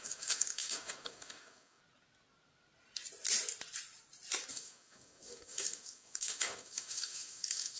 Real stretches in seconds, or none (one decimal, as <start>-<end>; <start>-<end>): 1.8-4.5